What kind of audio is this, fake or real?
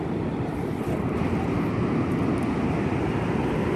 real